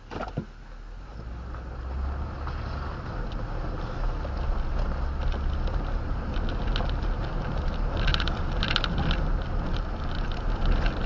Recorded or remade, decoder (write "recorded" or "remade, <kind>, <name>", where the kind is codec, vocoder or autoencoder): recorded